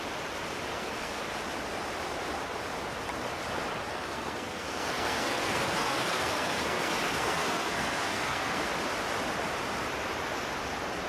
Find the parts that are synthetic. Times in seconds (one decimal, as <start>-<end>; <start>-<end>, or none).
0.7-1.2; 3.9-8.7